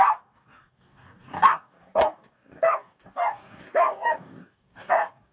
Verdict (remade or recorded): remade